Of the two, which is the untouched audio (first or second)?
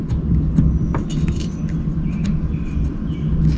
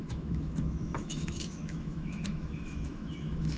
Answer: first